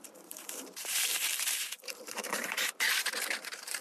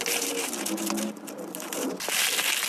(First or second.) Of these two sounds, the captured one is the second